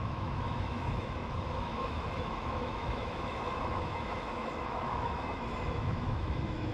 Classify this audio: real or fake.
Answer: fake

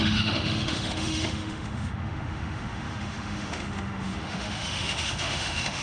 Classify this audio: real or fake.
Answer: fake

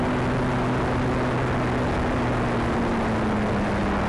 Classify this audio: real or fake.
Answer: real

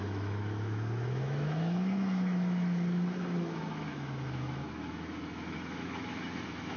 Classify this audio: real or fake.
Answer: fake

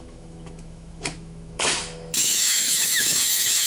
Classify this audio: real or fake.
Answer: fake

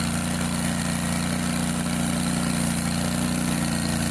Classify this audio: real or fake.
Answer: real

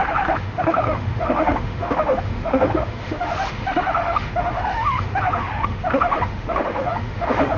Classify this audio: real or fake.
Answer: fake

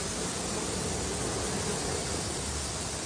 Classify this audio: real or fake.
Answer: real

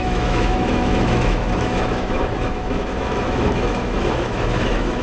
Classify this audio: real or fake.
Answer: fake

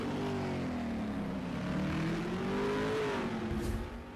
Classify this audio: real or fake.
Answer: real